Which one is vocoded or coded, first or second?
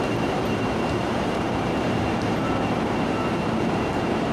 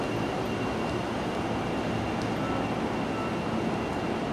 first